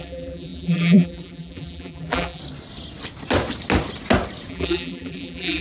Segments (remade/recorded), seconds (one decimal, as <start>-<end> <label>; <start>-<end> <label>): 0.0-2.4 remade; 2.4-4.5 recorded; 4.5-5.6 remade